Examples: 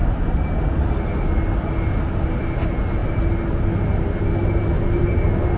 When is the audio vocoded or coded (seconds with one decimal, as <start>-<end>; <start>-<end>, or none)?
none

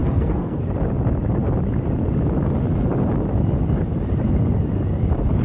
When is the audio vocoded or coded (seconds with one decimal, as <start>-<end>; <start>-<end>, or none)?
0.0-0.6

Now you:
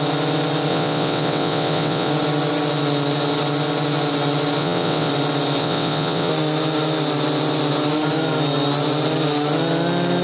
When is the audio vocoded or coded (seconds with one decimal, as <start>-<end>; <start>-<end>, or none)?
0.7-2.1; 4.6-5.1; 5.6-6.3

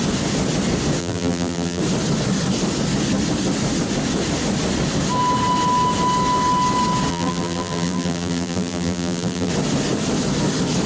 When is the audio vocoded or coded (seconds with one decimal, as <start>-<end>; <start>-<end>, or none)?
1.0-1.8; 7.1-9.5

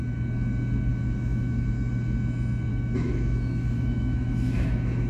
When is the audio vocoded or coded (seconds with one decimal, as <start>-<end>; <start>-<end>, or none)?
0.9-1.9; 2.7-5.1

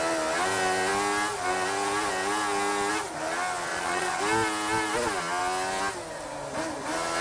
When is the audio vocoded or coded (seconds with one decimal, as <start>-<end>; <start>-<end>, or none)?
3.7-4.2

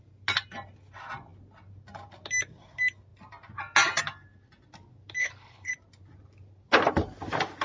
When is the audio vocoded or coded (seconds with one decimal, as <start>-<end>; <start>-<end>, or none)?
5.2-5.7

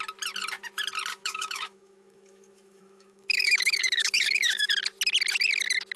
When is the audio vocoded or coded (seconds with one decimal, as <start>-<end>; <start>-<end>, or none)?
1.1-4.7